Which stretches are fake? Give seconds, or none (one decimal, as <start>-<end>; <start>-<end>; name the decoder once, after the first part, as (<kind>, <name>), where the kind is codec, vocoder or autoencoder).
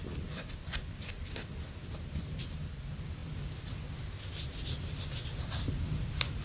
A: none